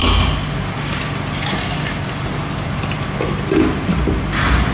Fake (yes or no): no